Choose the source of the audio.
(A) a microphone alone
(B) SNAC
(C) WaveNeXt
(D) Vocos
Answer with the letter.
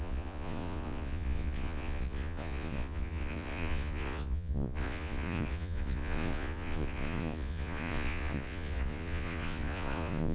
D